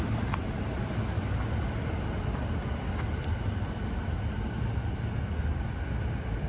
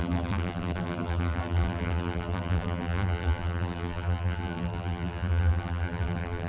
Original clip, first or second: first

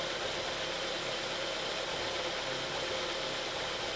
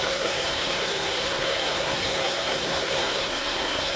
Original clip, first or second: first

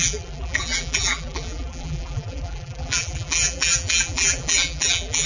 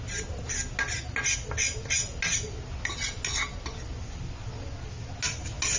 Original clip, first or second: second